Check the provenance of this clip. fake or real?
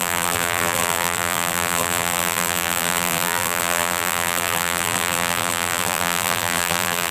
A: fake